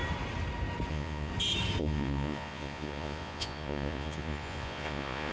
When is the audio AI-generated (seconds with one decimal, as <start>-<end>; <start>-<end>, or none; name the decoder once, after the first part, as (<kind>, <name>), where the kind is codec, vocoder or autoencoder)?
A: 0.9-1.3 (vocoder, Vocos); 1.8-5.3